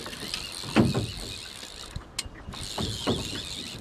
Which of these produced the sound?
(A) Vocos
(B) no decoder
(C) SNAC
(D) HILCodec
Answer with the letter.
B